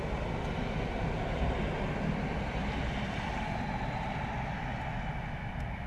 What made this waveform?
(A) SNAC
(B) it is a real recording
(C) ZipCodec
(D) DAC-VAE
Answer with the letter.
B